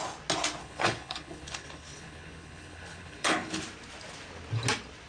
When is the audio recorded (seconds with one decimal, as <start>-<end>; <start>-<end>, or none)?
0.0-0.6; 3.6-5.1